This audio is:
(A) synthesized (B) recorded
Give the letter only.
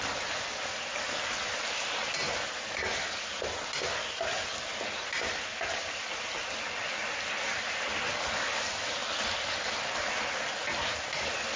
B